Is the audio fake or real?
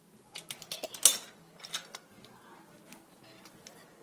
real